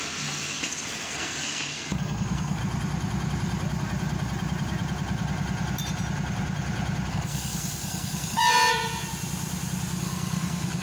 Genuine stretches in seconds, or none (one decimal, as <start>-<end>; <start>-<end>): 2.6-7.1; 8.4-10.0